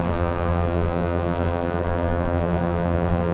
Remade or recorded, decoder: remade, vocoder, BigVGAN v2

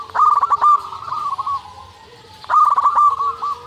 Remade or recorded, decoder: recorded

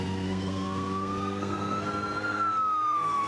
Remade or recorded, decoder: remade, codec, SNAC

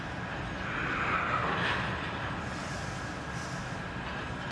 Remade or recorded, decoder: recorded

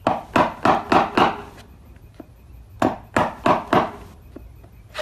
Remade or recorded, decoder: recorded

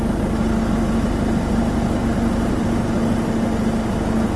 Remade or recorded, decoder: recorded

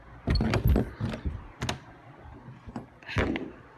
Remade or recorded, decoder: recorded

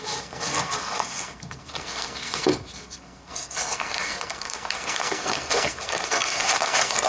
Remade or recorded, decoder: remade, codec, SNAC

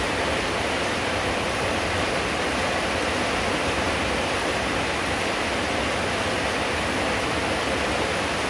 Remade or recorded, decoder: recorded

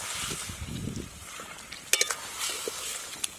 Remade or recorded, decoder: recorded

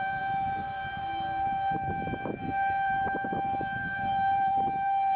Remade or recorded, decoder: remade, vocoder, BigVGAN v2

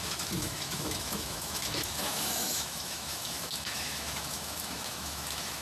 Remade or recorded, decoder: remade, autoencoder, DAC-VAE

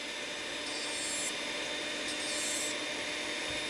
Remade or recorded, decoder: recorded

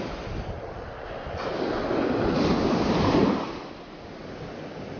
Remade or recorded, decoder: recorded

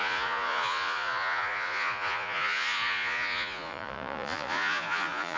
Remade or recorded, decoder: remade, vocoder, Vocos